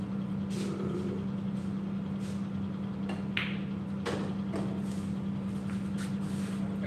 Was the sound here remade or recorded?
recorded